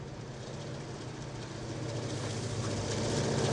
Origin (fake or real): real